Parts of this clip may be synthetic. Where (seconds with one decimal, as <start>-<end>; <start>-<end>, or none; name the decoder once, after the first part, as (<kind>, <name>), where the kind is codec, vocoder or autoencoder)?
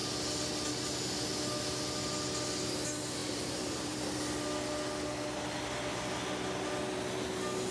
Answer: 3.2-4.1 (vocoder, BigVGAN v2)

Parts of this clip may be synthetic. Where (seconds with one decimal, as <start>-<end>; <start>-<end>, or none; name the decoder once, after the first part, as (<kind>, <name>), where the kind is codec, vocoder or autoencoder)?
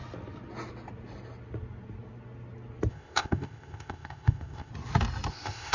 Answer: 2.9-4.7 (codec, ZipCodec); 5.3-5.7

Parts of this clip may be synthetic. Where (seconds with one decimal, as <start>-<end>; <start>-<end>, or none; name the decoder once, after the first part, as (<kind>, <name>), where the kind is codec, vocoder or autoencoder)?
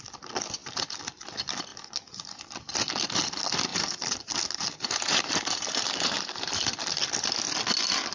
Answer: 3.7-6.7 (vocoder, BigVGAN v2)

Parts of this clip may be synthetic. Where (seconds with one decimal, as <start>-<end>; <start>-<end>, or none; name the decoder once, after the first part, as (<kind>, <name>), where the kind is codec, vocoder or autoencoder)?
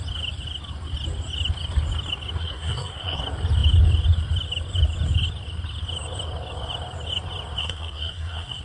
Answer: 2.4-3.2 (codec, SNAC); 7.6-8.6